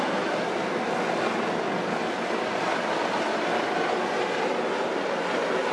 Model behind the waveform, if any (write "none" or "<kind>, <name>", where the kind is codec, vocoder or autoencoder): none